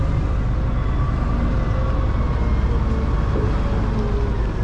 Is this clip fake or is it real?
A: real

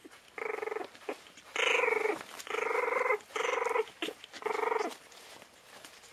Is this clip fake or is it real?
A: real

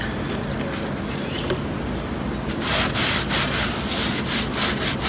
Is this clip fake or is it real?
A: real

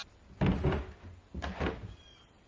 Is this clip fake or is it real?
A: real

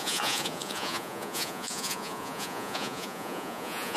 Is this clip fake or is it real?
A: fake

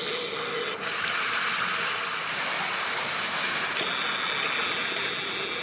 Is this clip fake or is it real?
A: real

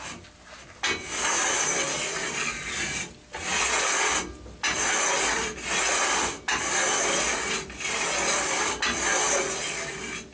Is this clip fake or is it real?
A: real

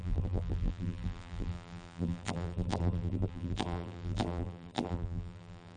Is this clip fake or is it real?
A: fake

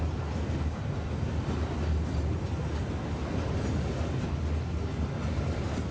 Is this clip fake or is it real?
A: real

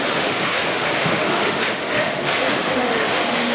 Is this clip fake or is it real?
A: fake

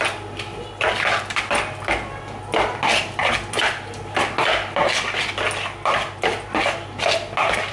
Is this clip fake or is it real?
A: real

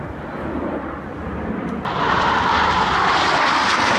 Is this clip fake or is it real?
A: real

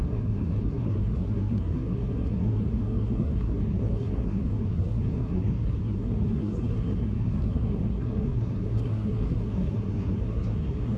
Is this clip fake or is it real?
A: fake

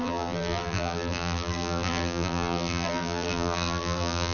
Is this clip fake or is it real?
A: fake